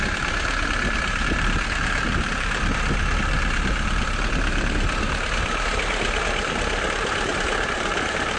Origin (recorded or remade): remade